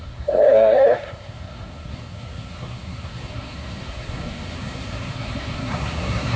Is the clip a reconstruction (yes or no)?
yes